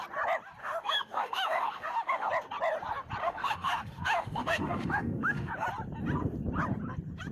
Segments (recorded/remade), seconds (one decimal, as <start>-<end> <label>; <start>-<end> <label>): 0.0-0.6 recorded; 0.6-2.3 remade; 2.3-3.2 recorded; 3.2-5.5 remade; 5.5-7.3 recorded